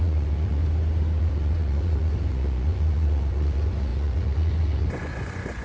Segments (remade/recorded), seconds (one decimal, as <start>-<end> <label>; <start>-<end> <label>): 0.0-0.6 remade; 0.6-1.2 recorded; 1.2-5.6 remade